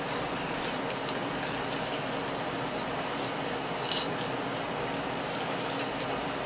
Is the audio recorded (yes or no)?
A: yes